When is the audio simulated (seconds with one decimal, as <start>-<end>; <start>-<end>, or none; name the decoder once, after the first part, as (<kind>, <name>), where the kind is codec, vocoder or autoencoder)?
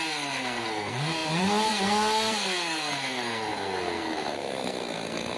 0.0-5.4 (codec, SNAC)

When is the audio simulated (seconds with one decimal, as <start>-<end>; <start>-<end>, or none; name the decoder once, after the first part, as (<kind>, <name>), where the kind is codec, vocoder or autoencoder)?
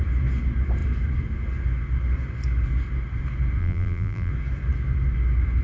3.6-4.3 (vocoder, BigVGAN v2)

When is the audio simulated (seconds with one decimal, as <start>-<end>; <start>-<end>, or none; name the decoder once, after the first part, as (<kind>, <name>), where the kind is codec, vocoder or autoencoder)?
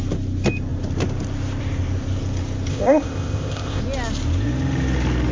2.7-3.8 (codec, ZipCodec)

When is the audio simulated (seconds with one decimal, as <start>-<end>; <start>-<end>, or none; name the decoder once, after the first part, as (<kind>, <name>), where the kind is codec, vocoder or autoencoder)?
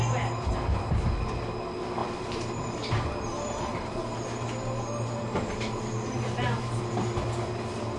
2.0-6.8 (vocoder, BigVGAN v2)